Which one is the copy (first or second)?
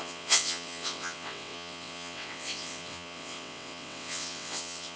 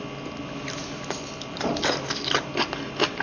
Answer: first